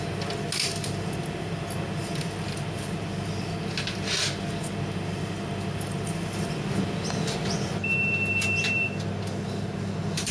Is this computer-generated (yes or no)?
no